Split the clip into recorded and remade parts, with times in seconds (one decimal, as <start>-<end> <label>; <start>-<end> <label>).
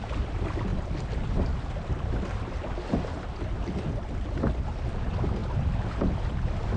0.0-5.4 recorded; 5.4-6.8 remade